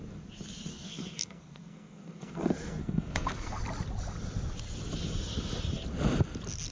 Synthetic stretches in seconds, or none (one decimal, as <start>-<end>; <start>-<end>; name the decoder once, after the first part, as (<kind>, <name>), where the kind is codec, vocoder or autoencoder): 0.7-3.6 (codec, SNAC)